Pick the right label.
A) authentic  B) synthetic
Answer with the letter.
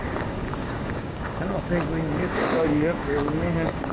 B